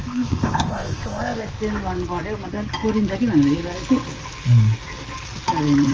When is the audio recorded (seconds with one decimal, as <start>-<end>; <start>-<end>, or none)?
1.6-5.9